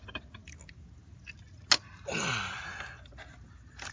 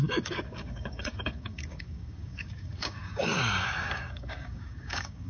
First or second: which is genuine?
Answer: first